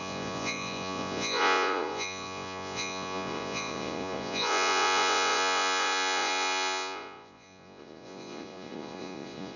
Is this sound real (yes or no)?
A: no